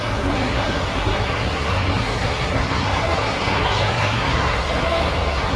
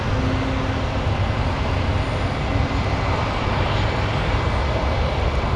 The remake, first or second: first